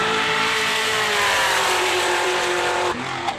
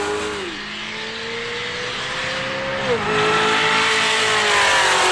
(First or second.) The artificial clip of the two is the first